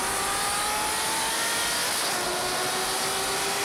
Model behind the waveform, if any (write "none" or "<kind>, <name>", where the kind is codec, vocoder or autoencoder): none